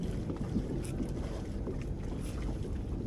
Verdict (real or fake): real